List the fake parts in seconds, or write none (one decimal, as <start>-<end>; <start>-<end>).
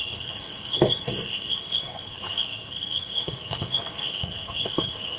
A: 0.0-5.2